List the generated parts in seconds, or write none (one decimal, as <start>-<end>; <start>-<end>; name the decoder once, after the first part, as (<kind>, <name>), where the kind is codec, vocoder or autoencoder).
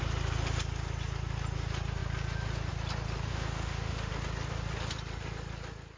3.3-4.1 (autoencoder, DAC-VAE)